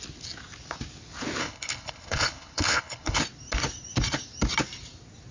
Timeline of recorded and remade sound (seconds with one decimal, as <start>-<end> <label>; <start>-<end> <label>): 0.0-1.4 recorded; 1.4-3.2 remade; 3.2-5.3 recorded

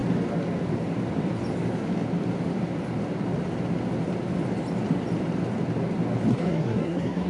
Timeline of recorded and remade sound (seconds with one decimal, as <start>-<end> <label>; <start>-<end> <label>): 0.0-6.3 recorded; 6.3-7.3 remade

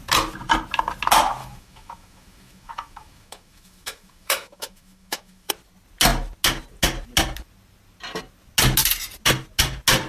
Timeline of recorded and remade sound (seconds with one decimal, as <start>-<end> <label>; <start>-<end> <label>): 0.0-1.4 recorded; 1.4-5.5 remade; 5.5-10.1 recorded

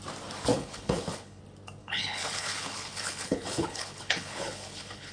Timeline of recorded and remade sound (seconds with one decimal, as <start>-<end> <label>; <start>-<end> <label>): 0.0-0.5 recorded; 0.5-1.4 remade; 1.4-1.8 recorded; 1.8-5.1 remade

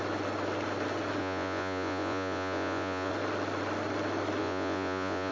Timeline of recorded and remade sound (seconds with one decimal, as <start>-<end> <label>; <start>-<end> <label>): 0.0-1.2 recorded; 1.2-3.1 remade; 3.1-4.4 recorded; 4.4-5.3 remade